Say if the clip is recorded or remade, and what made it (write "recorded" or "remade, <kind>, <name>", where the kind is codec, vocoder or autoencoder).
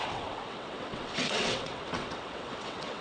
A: remade, vocoder, WaveNeXt